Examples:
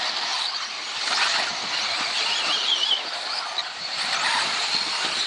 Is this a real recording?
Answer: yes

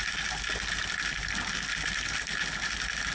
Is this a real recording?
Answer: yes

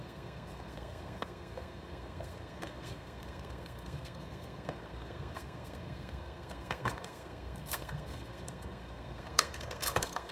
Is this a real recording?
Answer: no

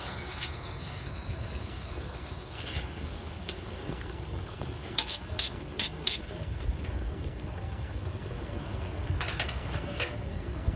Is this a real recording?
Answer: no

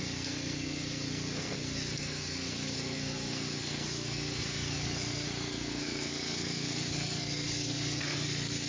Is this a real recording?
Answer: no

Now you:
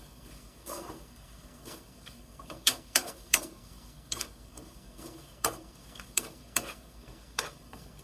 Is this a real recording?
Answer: no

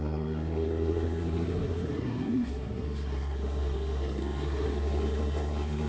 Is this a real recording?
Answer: no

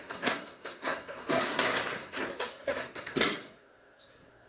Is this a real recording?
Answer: no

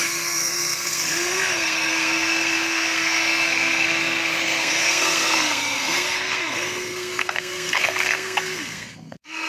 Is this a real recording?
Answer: no